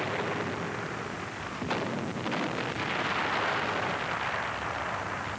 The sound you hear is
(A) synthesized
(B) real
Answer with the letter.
B